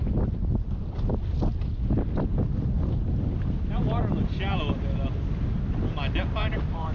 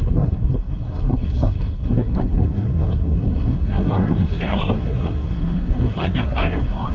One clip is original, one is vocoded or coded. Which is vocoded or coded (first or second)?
second